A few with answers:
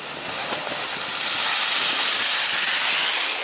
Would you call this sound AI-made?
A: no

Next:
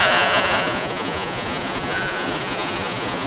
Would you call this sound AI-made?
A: yes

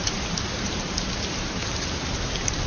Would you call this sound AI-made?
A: no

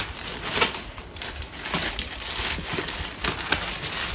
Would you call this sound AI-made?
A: no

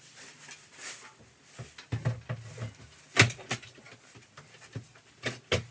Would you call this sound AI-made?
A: no